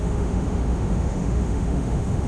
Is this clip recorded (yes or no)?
no